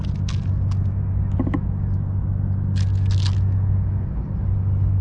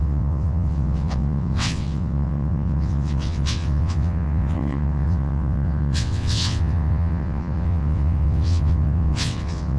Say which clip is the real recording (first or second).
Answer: first